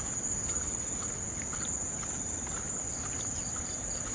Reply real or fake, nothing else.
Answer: real